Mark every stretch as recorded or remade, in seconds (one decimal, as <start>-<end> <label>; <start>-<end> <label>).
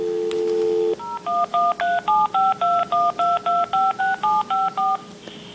0.0-5.5 recorded